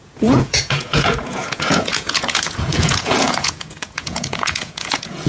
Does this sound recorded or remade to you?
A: remade